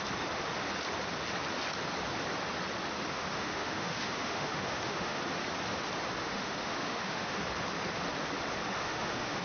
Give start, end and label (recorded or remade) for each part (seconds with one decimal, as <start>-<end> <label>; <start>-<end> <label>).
0.0-3.1 recorded; 3.1-5.2 remade; 5.2-6.2 recorded; 6.2-7.4 remade; 7.4-8.8 recorded; 8.8-9.4 remade